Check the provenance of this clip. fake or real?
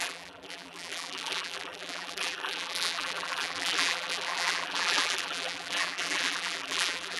fake